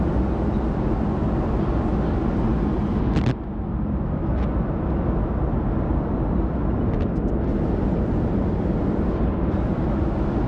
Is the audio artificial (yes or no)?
no